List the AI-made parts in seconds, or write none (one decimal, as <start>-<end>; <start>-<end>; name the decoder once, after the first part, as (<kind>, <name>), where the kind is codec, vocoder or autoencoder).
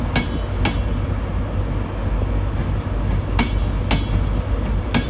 none